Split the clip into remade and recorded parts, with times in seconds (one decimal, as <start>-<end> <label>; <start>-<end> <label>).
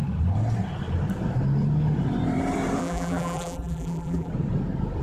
0.0-2.8 recorded; 2.8-4.3 remade; 4.3-5.0 recorded